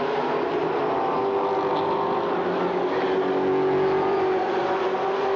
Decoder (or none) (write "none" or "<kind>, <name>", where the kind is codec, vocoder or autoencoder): none